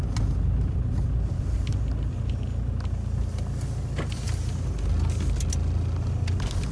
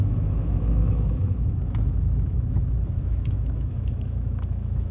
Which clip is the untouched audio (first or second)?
first